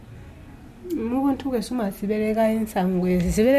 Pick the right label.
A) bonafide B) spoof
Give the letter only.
A